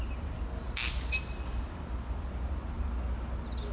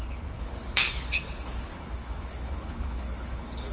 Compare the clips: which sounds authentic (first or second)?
first